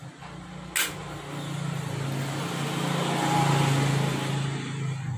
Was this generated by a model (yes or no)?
no